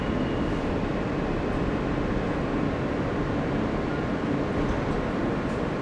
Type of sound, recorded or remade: recorded